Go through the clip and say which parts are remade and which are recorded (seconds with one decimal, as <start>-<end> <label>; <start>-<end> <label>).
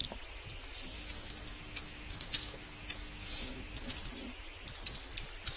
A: 0.0-0.9 recorded; 0.9-4.0 remade; 4.0-5.6 recorded